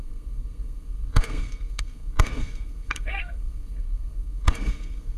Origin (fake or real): fake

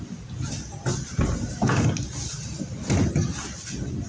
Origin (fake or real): real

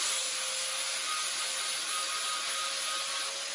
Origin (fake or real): real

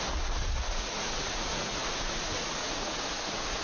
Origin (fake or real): fake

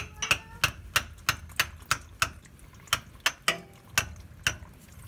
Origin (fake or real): real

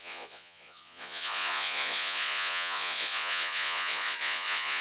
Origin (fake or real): fake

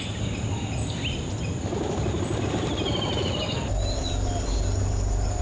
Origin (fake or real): real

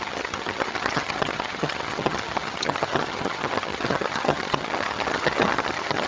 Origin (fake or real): fake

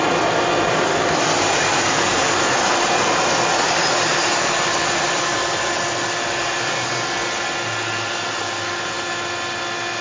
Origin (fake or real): real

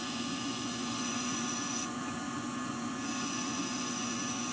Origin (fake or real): fake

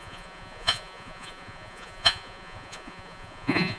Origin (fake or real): fake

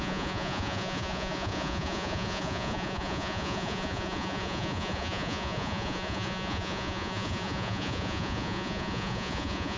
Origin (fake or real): fake